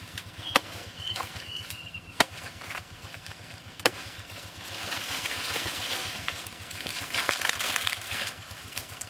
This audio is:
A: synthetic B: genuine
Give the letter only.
A